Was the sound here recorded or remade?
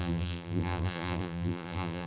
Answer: remade